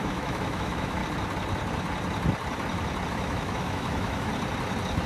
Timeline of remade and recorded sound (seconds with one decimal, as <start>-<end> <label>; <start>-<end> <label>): 0.0-1.0 remade; 1.0-3.1 recorded; 3.1-4.3 remade; 4.3-5.1 recorded